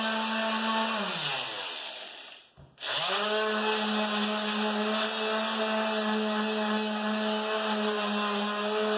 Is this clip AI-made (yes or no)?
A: no